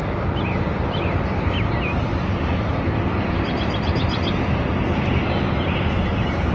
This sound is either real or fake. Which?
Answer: real